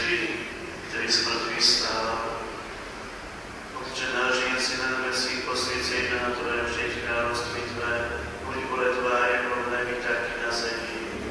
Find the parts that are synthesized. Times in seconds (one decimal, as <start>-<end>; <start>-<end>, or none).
0.0-0.5